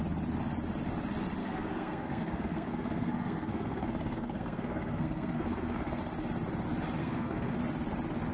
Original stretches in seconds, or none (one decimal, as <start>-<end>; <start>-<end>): 0.0-1.4; 6.0-7.0; 7.6-8.3